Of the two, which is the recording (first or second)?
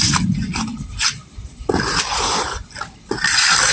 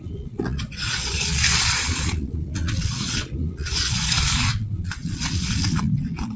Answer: first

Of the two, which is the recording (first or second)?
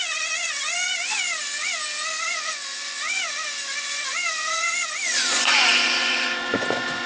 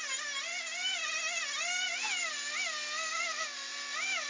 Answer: second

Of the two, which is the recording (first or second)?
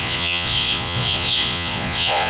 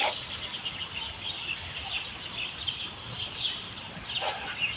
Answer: second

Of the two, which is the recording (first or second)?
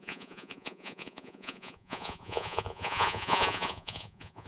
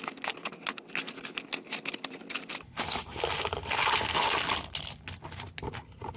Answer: second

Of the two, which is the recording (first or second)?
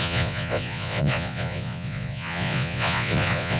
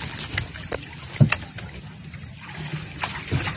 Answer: second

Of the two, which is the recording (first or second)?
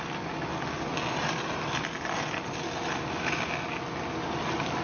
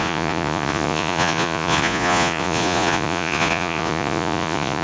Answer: first